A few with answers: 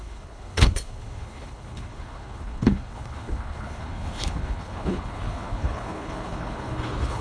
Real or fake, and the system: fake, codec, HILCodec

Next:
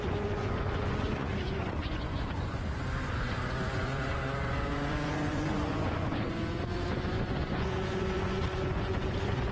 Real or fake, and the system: fake, vocoder, Vocos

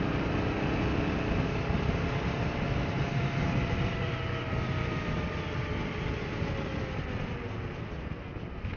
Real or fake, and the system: real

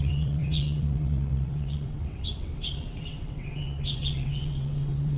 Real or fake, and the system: fake, vocoder, WaveNeXt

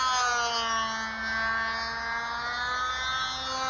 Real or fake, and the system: real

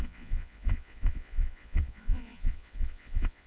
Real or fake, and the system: fake, vocoder, Vocos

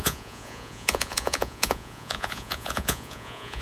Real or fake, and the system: fake, vocoder, Vocos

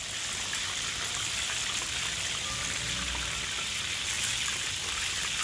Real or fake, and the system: real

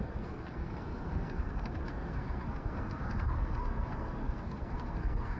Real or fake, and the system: fake, codec, SNAC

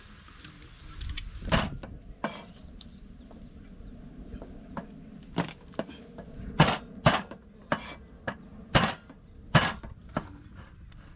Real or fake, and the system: real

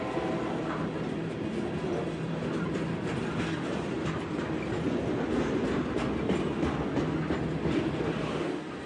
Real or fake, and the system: real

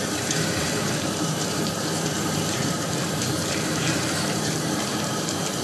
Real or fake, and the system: fake, vocoder, BigVGAN v2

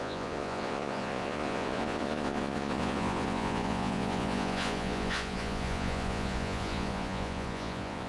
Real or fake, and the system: fake, vocoder, Vocos